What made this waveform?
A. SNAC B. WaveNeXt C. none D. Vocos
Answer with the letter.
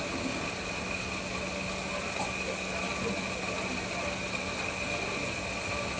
C